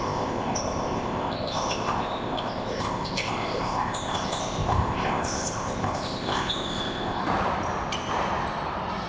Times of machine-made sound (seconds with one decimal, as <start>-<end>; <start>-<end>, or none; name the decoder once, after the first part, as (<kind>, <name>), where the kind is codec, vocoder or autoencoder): 0.0-7.2 (codec, ZipCodec)